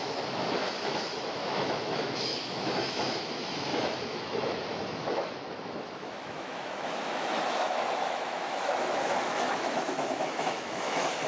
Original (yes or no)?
no